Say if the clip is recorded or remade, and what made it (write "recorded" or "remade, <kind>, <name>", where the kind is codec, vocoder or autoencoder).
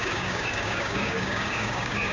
remade, codec, DAC